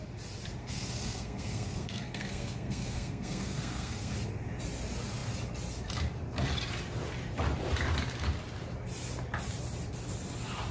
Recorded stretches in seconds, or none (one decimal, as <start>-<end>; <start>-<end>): 0.0-0.6; 4.1-10.7